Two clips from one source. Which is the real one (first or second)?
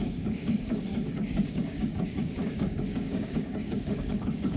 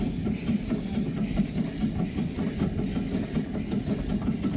second